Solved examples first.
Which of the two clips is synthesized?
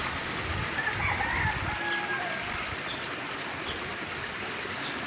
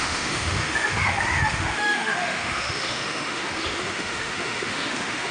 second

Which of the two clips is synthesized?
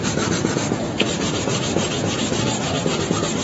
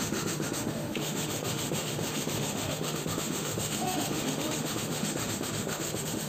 second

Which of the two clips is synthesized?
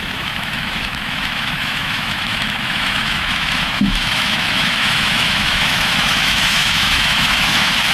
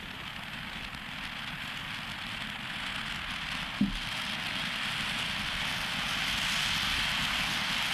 first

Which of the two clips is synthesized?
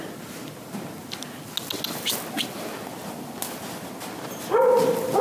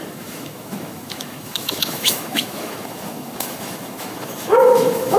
second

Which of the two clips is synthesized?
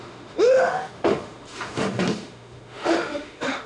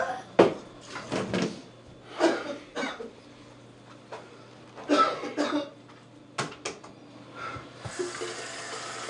first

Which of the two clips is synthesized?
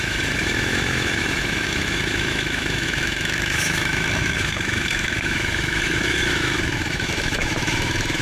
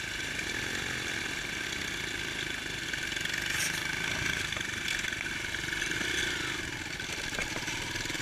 first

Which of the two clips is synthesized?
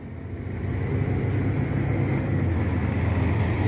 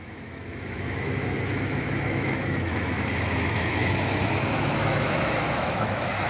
second